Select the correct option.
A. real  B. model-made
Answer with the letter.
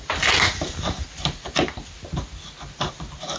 A